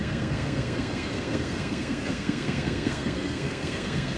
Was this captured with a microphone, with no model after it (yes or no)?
no